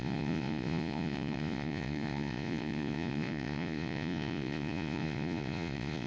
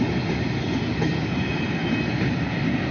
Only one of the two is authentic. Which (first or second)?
second